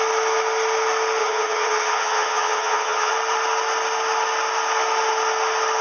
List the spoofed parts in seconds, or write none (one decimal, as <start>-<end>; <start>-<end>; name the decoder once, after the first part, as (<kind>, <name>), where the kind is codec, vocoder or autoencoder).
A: 1.2-3.1 (vocoder, HiFi-GAN)